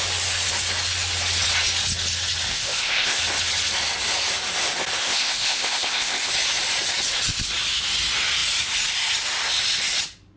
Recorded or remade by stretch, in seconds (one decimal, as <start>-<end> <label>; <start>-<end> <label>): 0.0-2.5 recorded; 2.5-3.2 remade; 3.2-5.0 recorded; 5.0-6.3 remade; 6.3-10.4 recorded